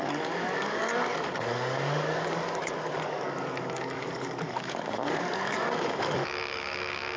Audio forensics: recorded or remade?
remade